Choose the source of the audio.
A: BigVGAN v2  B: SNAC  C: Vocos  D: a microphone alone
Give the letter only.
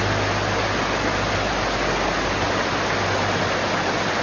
D